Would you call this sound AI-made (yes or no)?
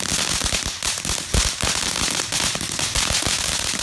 no